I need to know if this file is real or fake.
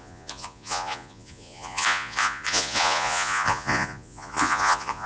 fake